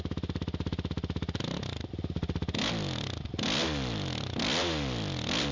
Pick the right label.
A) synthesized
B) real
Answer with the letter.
B